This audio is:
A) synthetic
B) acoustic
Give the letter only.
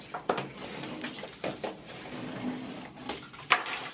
B